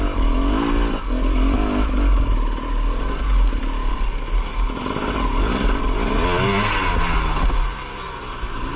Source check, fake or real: real